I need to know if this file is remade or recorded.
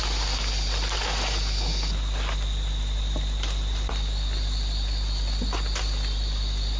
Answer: recorded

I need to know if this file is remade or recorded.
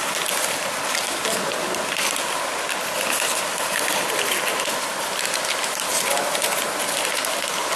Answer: recorded